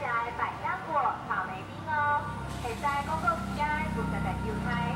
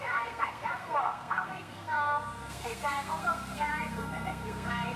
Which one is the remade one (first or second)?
second